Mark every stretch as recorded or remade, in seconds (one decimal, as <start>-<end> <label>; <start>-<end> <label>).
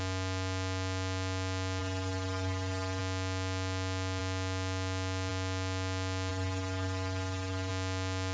0.0-1.8 recorded; 1.8-3.0 remade; 3.0-6.3 recorded; 6.3-7.7 remade; 7.7-8.3 recorded